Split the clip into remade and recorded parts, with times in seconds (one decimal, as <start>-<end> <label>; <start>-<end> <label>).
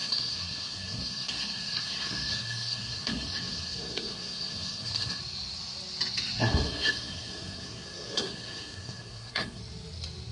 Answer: 0.0-5.2 remade; 5.2-6.4 recorded; 6.4-9.6 remade; 9.6-10.3 recorded